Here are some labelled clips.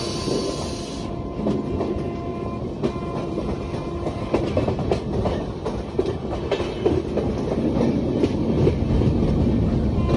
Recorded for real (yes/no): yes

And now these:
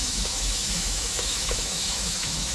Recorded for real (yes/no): no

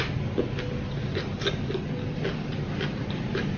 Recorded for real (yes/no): yes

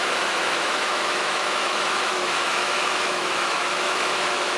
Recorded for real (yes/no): no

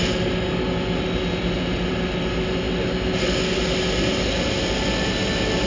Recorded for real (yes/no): yes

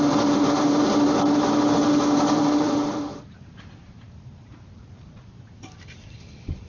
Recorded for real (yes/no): no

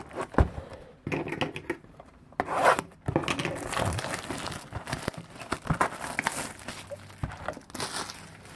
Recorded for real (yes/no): yes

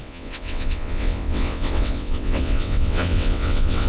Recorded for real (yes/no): no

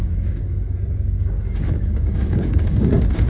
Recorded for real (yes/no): no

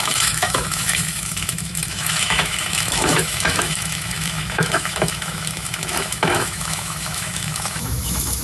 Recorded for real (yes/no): no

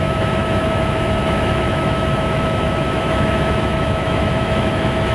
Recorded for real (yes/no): no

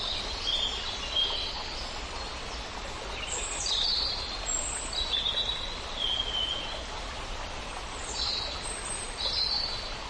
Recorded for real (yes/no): yes